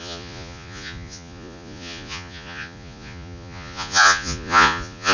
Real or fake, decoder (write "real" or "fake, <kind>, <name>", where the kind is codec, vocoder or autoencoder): fake, vocoder, Vocos